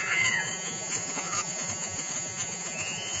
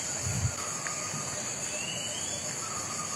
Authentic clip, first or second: second